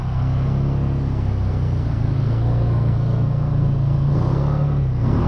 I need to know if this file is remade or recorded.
remade